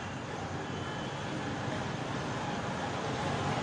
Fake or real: real